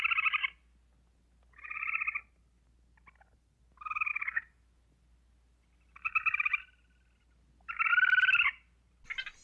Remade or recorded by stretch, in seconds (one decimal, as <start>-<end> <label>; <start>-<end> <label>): 0.0-9.4 recorded

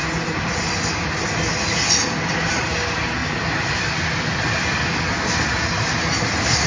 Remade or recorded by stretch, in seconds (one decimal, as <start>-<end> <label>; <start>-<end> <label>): 0.0-6.7 recorded